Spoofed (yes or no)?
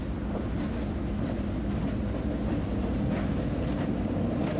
no